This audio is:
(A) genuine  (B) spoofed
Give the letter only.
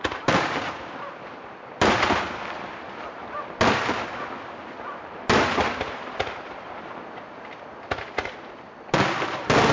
A